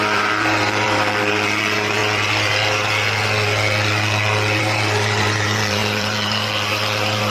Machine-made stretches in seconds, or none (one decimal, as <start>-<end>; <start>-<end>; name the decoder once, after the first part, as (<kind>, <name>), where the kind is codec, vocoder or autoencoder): 0.0-2.0 (vocoder, BigVGAN v2); 4.6-7.3